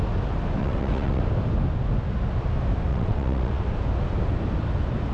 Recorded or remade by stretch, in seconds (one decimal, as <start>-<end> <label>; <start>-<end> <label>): 0.0-0.6 recorded; 0.6-1.2 remade; 1.2-2.9 recorded; 2.9-3.6 remade; 3.6-5.1 recorded